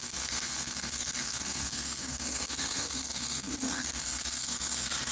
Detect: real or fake fake